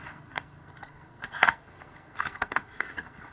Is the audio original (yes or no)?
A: no